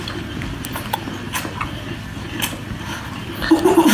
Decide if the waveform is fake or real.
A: real